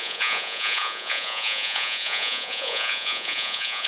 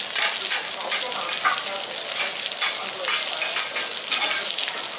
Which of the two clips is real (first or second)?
second